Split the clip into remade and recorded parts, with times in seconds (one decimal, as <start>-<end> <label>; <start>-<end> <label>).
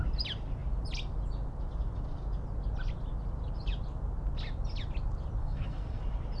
0.0-5.4 recorded; 5.4-6.0 remade; 6.0-6.4 recorded